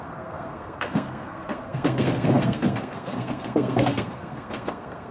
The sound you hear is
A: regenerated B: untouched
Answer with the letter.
A